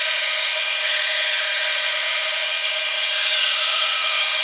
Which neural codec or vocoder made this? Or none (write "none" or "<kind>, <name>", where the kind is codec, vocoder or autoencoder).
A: vocoder, HiFi-GAN